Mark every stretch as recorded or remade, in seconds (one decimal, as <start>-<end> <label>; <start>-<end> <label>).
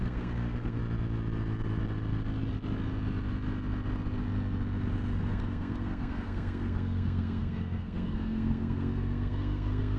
0.0-0.8 remade; 0.8-5.3 recorded; 5.3-10.0 remade